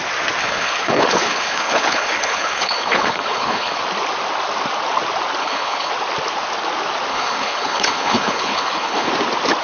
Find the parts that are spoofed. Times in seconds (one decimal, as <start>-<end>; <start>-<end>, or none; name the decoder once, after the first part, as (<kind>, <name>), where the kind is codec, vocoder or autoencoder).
0.4-3.8 (codec, HILCodec); 5.4-5.9; 7.1-9.1